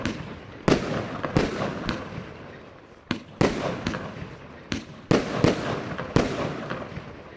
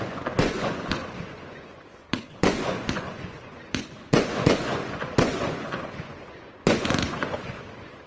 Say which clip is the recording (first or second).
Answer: first